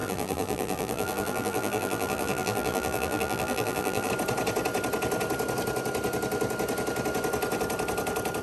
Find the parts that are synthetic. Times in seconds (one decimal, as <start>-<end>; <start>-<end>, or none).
0.0-4.1